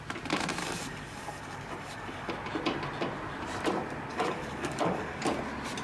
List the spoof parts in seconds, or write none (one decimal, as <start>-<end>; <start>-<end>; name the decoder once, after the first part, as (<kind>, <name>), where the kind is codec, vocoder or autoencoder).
0.6-2.3 (codec, DAC); 4.1-5.2